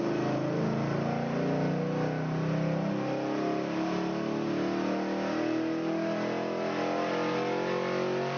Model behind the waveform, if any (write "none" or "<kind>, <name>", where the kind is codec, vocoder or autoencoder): none